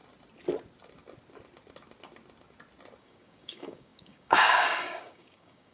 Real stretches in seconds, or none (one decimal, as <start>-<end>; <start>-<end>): 0.0-3.0